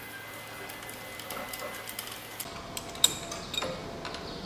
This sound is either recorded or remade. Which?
recorded